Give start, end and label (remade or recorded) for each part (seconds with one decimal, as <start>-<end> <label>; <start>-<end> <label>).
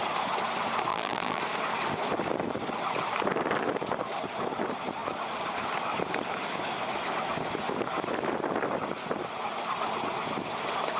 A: 0.0-0.9 recorded; 0.9-1.4 remade; 1.4-11.0 recorded